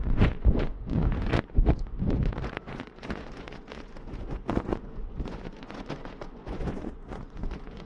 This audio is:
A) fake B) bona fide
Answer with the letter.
A